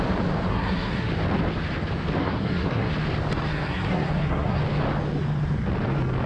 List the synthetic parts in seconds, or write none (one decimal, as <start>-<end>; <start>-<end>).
0.5-1.1; 2.2-2.9; 3.5-4.6